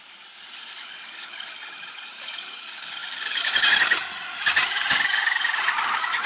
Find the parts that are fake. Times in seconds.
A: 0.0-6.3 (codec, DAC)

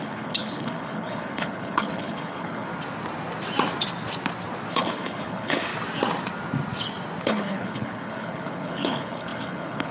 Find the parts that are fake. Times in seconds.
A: 0.0-2.7 (codec, HILCodec); 4.7-5.7; 7.2-9.9

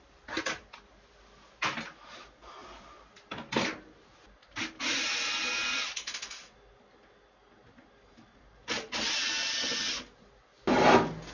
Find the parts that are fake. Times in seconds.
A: none

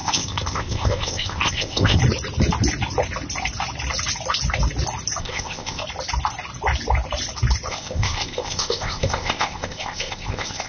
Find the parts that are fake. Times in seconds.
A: 0.0-2.0 (codec, ZipCodec); 5.2-5.8; 7.7-10.7

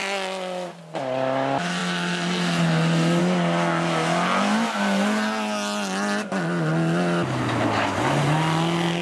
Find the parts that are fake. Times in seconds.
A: none

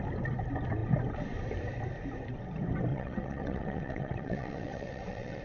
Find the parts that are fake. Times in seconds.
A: 2.9-5.4 (vocoder, WaveNeXt)

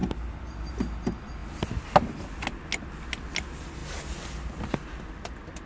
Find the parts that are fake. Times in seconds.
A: none

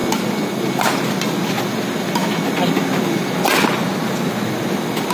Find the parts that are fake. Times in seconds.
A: none